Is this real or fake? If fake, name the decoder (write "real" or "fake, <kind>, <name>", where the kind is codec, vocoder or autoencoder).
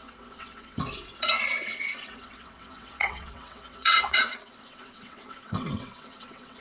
fake, vocoder, WaveNeXt